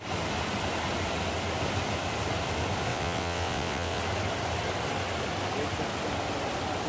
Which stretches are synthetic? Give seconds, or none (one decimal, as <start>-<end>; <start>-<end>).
2.9-4.0